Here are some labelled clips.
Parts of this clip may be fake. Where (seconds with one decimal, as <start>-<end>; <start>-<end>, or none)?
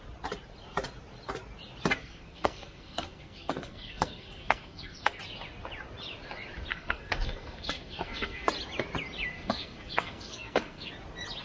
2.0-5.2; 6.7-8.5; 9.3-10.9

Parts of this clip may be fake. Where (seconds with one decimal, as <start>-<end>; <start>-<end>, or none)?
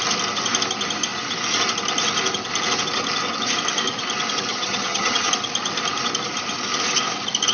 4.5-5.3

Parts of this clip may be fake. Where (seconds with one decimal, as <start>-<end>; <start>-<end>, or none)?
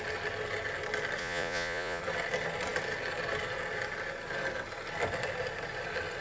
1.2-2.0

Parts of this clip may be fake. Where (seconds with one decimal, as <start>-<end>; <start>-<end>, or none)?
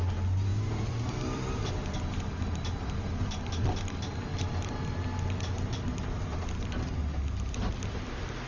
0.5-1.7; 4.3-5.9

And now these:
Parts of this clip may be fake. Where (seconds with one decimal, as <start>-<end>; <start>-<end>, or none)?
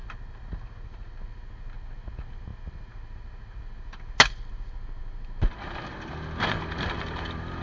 none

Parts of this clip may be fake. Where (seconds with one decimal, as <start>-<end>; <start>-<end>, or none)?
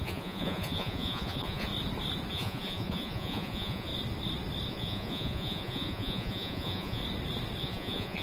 0.0-1.7; 2.3-3.9; 4.7-7.0; 7.6-8.2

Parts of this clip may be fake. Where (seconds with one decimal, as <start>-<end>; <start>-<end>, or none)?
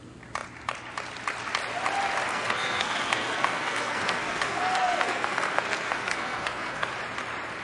2.3-6.9